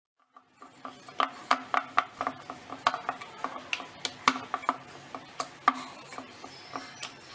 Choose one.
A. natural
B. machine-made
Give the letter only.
A